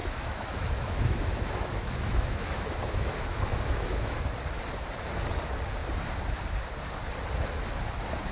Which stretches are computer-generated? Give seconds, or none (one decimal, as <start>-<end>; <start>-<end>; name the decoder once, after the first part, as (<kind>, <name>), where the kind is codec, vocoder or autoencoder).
0.0-4.2 (autoencoder, DAC-VAE)